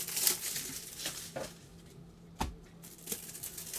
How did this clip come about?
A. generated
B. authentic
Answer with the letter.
B